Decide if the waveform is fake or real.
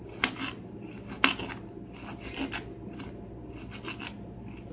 real